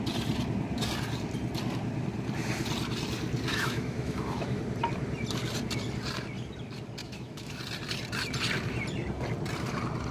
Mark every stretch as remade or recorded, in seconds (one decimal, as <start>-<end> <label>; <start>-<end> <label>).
0.0-3.5 recorded; 3.5-4.6 remade; 4.6-7.0 recorded; 7.0-7.6 remade; 7.6-10.1 recorded